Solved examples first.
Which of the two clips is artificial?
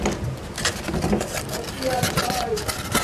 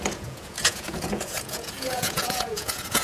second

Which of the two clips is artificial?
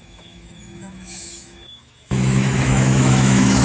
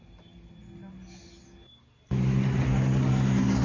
first